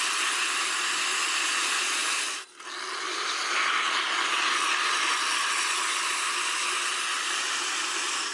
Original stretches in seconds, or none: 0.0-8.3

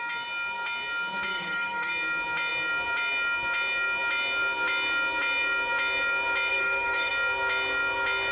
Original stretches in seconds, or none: 0.0-1.3; 1.9-6.5; 7.1-8.3

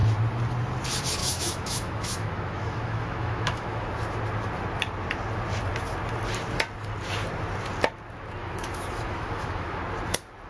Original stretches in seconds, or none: 0.0-1.2; 3.9-8.4; 9.8-10.5